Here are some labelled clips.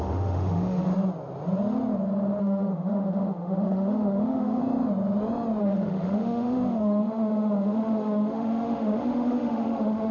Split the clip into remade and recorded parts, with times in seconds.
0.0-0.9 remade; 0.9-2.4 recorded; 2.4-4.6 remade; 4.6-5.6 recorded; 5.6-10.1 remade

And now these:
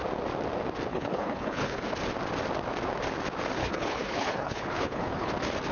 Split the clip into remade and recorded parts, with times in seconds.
0.0-0.9 recorded; 0.9-1.8 remade; 1.8-3.6 recorded; 3.6-5.3 remade; 5.3-5.7 recorded